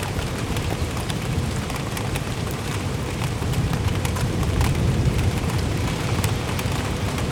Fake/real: fake